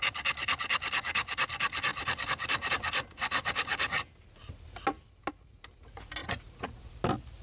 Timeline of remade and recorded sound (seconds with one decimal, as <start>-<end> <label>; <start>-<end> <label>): 0.0-6.2 recorded; 6.2-6.8 remade; 6.8-7.4 recorded